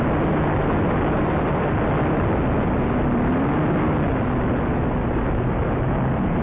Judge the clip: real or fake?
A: real